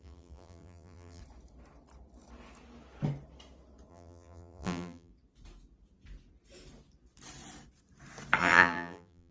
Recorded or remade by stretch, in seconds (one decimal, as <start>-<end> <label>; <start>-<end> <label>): 0.0-1.2 remade; 1.2-3.9 recorded; 3.9-5.1 remade; 5.1-8.4 recorded; 8.4-9.3 remade